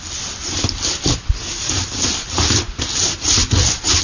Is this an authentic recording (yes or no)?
yes